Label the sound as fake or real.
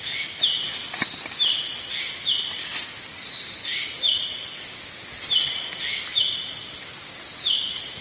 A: real